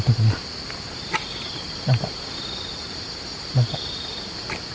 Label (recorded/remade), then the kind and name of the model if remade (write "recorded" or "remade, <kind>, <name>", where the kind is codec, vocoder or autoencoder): recorded